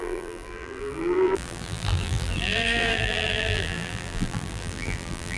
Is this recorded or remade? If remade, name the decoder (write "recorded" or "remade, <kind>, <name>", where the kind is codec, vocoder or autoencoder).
remade, vocoder, BigVGAN v2